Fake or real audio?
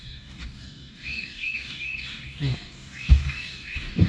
fake